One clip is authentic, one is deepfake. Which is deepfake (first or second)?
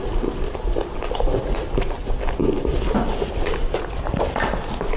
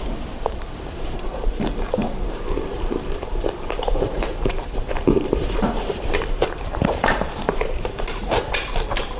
second